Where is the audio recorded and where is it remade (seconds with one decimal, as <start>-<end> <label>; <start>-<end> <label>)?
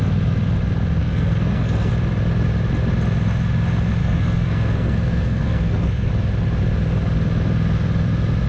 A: 0.0-1.0 recorded; 1.0-1.9 remade; 1.9-4.0 recorded; 4.0-6.1 remade; 6.1-8.5 recorded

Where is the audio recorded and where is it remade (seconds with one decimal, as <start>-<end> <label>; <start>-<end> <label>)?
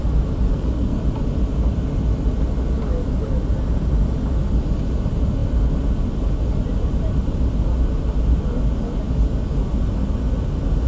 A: 0.0-0.5 recorded; 0.5-1.0 remade; 1.0-10.9 recorded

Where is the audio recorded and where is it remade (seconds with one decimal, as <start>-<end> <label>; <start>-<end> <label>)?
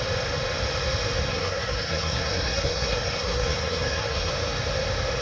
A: 0.0-1.3 recorded; 1.3-4.3 remade; 4.3-5.2 recorded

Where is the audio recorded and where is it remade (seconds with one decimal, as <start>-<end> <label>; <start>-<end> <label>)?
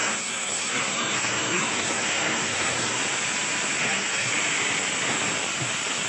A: 0.0-3.0 remade; 3.0-3.8 recorded; 3.8-4.3 remade; 4.3-6.1 recorded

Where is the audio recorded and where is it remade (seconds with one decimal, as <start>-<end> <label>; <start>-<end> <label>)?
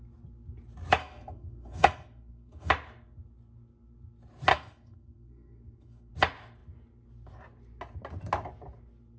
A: 0.0-1.0 recorded; 1.0-2.7 remade; 2.7-4.5 recorded; 4.5-6.1 remade; 6.1-9.2 recorded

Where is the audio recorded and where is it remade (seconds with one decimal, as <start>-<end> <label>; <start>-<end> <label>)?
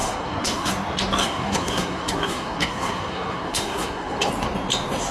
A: 0.0-0.7 remade; 0.7-1.2 recorded; 1.2-4.3 remade; 4.3-5.1 recorded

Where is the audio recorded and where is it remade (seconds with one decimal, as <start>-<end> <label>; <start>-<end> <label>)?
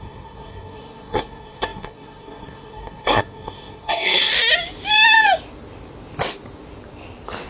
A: 0.0-4.3 remade; 4.3-7.5 recorded